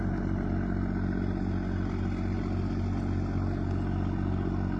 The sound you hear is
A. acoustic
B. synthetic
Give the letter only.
A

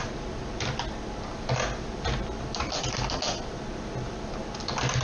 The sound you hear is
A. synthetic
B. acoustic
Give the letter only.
B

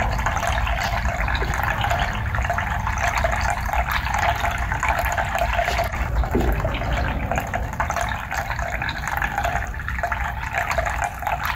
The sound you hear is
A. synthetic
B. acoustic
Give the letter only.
B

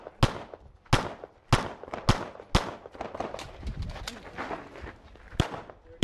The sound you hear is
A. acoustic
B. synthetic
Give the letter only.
A